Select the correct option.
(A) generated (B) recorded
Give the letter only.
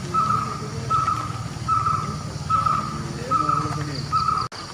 B